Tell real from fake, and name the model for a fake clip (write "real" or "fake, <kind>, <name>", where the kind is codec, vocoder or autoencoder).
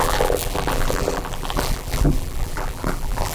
fake, vocoder, BigVGAN v2